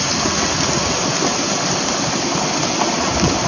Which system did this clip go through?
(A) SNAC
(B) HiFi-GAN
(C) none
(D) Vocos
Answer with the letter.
C